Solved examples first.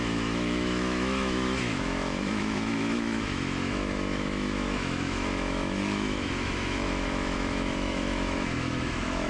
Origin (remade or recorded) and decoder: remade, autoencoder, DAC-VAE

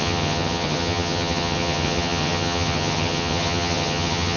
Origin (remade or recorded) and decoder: remade, vocoder, HiFi-GAN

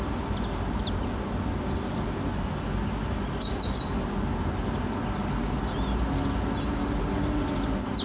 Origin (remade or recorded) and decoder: recorded